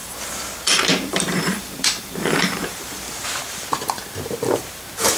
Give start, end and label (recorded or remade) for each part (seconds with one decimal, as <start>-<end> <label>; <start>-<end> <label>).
0.0-5.2 remade